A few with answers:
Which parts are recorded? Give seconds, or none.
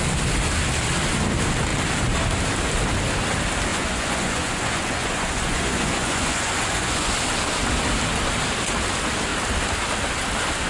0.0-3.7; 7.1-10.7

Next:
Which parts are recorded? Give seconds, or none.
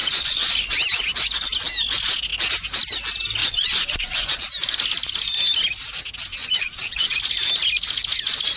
0.5-3.4; 4.4-6.4; 7.2-8.6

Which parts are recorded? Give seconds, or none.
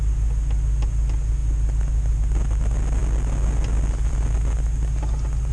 0.0-5.5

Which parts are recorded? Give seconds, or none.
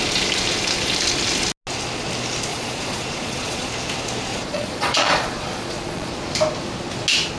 0.0-2.5; 3.7-4.3; 6.1-7.4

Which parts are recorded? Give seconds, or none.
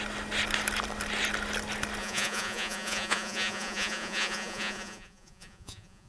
0.0-2.0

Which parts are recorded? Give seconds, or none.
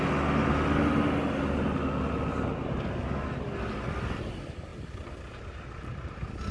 0.0-6.5